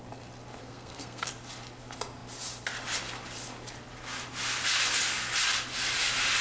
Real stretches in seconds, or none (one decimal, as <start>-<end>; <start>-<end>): 0.0-0.6; 1.3-6.4